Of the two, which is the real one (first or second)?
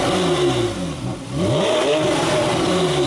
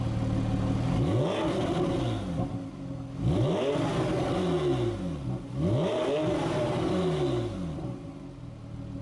second